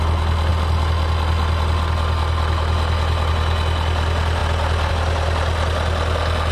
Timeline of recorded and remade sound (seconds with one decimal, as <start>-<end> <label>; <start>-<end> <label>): 0.0-6.5 recorded